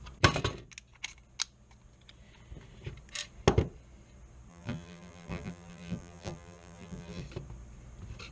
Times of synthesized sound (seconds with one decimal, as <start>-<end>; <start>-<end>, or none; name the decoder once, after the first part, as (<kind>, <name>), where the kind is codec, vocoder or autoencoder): 4.5-7.2 (vocoder, BigVGAN v2)